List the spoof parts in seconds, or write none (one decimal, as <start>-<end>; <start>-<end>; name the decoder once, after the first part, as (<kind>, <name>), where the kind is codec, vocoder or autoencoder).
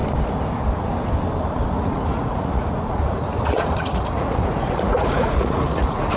1.7-6.2 (vocoder, Vocos)